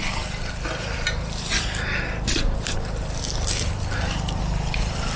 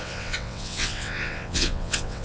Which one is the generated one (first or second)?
second